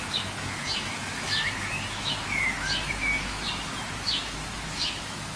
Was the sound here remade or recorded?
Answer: remade